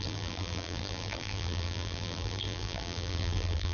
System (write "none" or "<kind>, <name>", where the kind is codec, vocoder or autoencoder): vocoder, BigVGAN v2